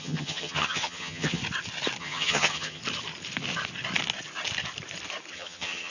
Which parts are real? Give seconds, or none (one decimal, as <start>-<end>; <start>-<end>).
1.4-2.0; 2.8-5.3